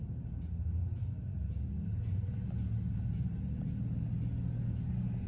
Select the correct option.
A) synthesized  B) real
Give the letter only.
B